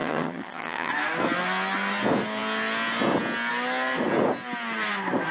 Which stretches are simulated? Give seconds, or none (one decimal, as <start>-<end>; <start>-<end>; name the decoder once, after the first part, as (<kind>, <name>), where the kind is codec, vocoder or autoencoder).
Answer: 0.0-0.9 (vocoder, HiFi-GAN)